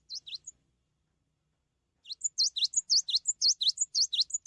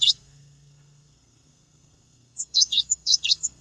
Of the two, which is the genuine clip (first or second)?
first